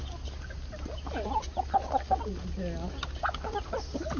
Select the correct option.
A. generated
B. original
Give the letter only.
B